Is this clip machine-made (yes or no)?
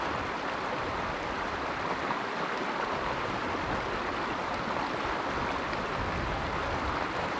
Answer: no